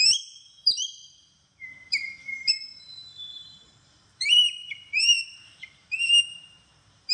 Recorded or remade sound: remade